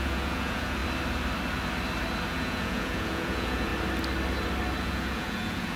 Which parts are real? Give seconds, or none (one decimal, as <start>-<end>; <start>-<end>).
0.8-2.3; 3.7-4.8